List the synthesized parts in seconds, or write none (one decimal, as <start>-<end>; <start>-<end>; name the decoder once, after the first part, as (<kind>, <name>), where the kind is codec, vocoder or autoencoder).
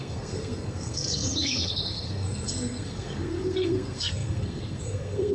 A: 0.0-5.3 (codec, SNAC)